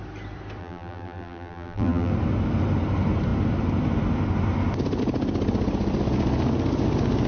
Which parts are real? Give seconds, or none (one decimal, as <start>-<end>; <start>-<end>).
0.0-0.6; 2.1-7.3